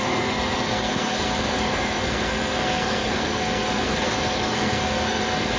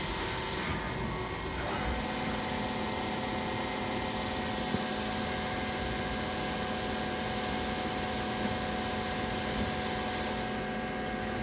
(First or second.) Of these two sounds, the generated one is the first